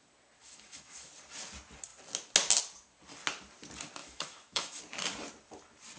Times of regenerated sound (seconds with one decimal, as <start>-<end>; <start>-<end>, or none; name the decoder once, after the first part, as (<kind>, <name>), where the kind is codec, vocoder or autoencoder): 0.4-1.1 (autoencoder, DAC-VAE); 4.0-4.8